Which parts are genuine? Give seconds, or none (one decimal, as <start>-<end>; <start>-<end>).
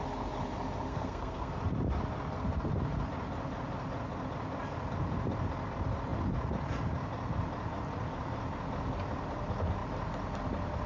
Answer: 0.0-0.9; 1.5-10.9